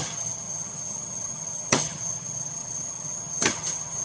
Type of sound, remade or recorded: remade